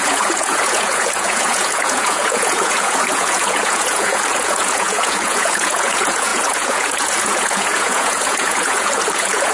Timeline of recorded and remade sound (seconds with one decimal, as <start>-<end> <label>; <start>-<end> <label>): 0.0-9.5 remade